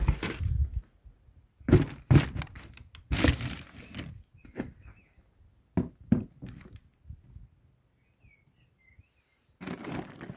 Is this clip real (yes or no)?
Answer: yes